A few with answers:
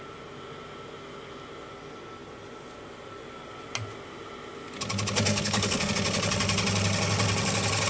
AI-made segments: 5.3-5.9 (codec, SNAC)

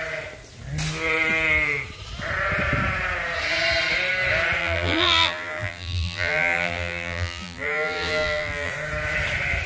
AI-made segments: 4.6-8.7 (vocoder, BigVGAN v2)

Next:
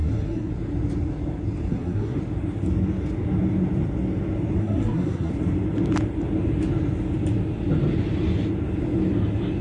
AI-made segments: 0.0-0.5 (codec, SNAC); 1.7-2.2; 4.6-5.3

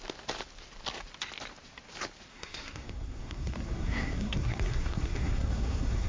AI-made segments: 2.3-6.1 (codec, SNAC)

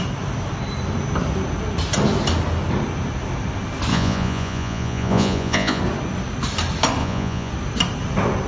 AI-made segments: 3.9-5.8 (vocoder, Vocos); 7.0-7.5

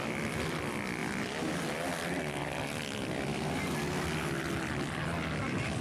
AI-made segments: none

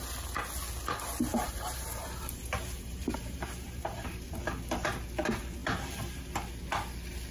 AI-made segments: 1.3-4.4 (vocoder, BigVGAN v2); 5.6-6.2